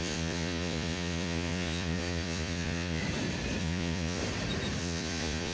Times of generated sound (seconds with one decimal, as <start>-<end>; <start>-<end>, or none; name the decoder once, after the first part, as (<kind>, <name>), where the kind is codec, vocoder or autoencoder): 0.0-3.0 (vocoder, Vocos); 3.6-4.2; 4.8-5.5